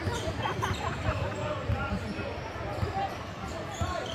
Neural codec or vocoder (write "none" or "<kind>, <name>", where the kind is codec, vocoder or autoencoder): none